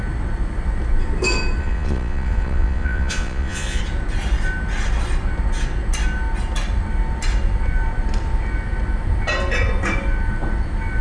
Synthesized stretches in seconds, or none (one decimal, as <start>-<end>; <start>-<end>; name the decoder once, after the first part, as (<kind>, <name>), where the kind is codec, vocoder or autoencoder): 1.6-3.8 (vocoder, Vocos)